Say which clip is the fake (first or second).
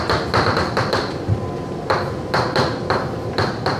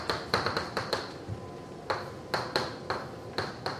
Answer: first